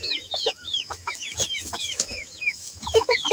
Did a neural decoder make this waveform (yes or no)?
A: yes